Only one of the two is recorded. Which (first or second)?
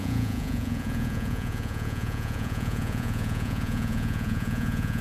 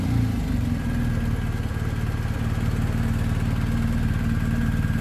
second